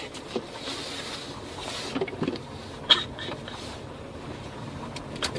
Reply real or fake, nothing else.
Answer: fake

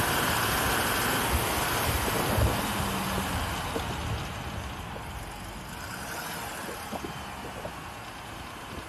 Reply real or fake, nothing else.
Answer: real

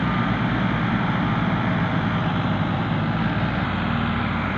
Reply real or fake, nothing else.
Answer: fake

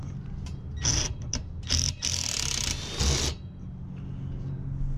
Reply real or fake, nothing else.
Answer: real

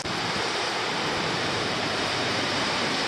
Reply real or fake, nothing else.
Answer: fake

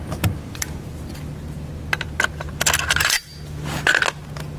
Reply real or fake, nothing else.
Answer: real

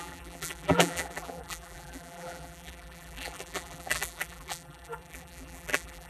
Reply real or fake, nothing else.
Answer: fake